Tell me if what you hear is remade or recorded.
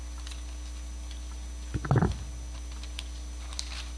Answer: recorded